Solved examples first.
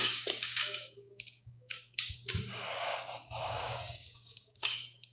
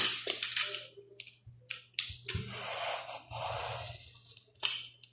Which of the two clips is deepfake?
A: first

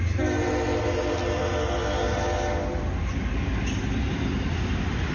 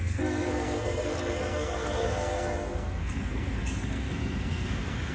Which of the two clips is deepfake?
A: second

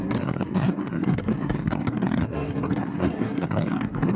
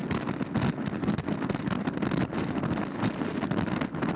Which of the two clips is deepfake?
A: first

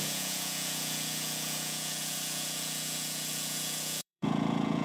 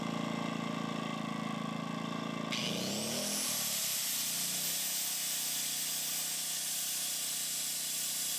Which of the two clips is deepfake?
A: first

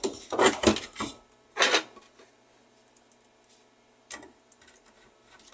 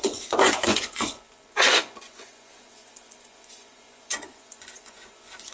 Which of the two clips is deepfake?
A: second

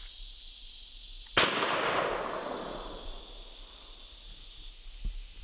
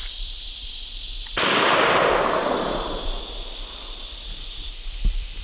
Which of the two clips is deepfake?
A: second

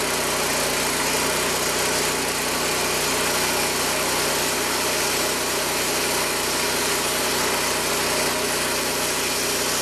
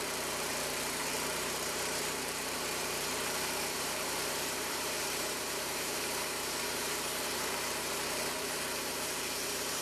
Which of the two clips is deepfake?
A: second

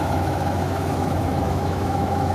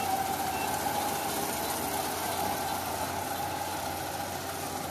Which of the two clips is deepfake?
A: first